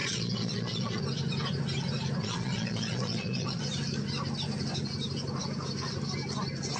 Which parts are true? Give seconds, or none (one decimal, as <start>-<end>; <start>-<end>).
1.0-2.2; 3.6-6.8